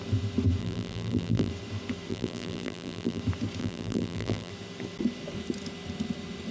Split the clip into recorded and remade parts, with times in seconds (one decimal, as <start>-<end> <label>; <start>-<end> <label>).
0.0-0.6 recorded; 0.6-1.5 remade; 1.5-2.1 recorded; 2.1-3.2 remade; 3.2-3.6 recorded; 3.6-4.5 remade; 4.5-6.5 recorded